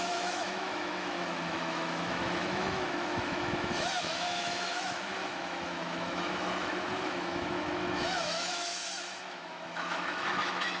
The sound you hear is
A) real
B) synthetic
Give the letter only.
B